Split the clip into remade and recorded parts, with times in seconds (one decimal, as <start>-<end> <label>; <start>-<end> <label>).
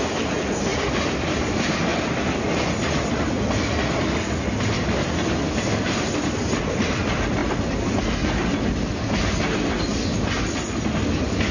0.0-11.5 recorded